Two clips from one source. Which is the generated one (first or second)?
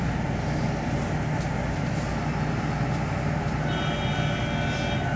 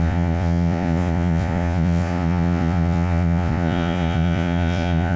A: second